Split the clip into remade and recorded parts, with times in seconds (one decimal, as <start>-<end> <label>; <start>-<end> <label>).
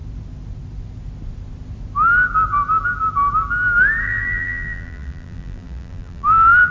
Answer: 0.0-4.0 recorded; 4.0-6.7 remade